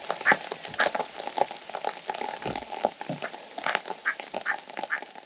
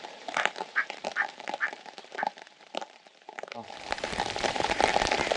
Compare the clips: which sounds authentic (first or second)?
first